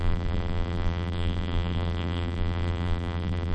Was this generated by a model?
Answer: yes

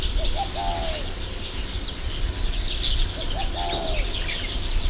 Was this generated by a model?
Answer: no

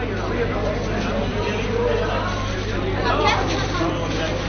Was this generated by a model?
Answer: no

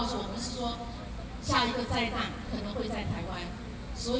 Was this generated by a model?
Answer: no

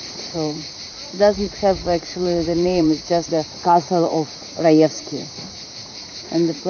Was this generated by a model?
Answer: yes